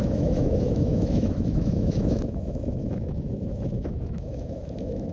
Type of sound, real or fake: fake